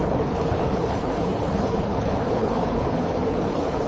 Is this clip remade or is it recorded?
remade